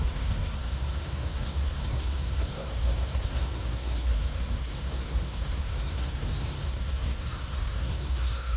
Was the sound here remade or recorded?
remade